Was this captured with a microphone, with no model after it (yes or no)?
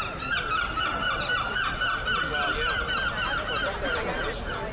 yes